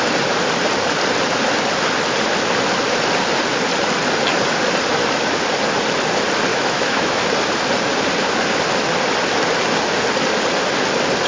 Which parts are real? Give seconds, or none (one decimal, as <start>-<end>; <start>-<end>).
0.0-6.5; 7.2-11.3